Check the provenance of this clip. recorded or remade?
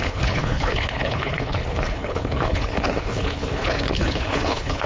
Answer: remade